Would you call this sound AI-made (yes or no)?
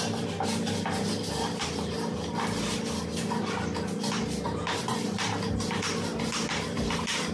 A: no